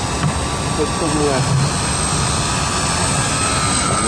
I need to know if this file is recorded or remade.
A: recorded